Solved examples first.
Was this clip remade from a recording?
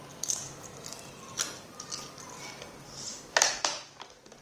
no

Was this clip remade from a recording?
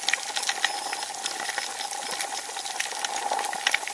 no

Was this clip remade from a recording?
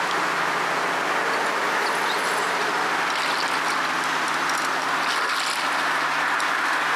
no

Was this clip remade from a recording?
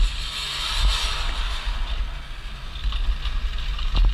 no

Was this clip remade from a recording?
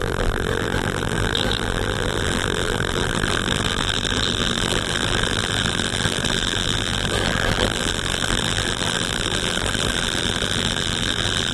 yes